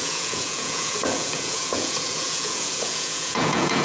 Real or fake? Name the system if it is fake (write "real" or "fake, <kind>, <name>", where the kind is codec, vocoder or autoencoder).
fake, vocoder, Vocos